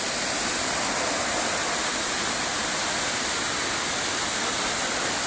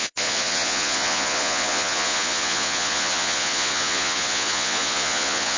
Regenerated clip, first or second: second